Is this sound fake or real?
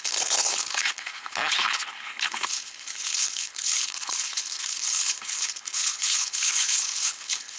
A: fake